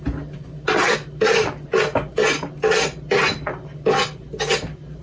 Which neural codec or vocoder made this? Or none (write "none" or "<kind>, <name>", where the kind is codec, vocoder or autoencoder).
none